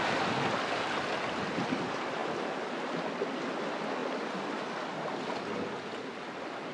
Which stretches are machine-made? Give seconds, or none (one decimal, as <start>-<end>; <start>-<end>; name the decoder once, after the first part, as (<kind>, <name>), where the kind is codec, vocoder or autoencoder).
none